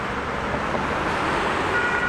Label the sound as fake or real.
real